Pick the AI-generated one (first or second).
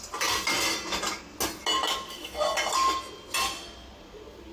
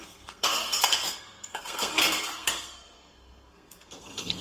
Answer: second